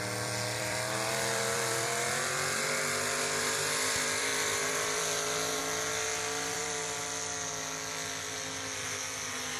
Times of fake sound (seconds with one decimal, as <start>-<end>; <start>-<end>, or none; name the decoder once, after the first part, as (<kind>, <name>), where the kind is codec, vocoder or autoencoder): 0.0-7.0 (vocoder, BigVGAN v2)